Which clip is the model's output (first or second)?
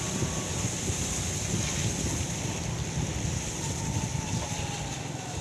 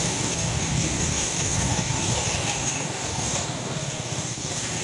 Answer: second